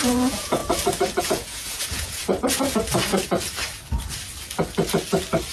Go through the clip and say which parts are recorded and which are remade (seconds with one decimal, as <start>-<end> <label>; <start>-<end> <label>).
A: 0.0-0.6 remade; 0.6-1.2 recorded; 1.2-2.2 remade; 2.2-5.5 recorded